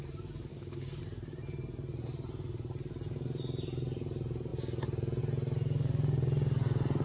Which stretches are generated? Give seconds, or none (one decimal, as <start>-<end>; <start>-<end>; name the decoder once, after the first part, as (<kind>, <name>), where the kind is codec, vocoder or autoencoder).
0.5-1.0 (codec, DAC)